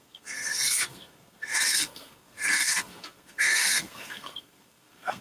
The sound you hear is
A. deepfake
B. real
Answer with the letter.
A